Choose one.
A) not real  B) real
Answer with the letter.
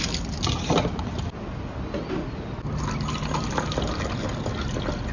B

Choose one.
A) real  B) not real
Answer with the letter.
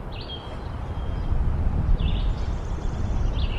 A